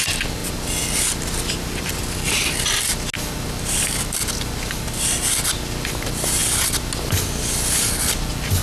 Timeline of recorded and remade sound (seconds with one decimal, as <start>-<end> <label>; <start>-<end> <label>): 0.0-8.6 recorded